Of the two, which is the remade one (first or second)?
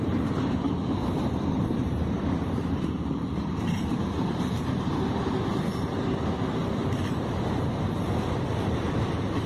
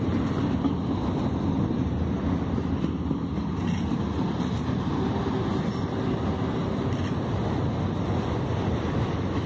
first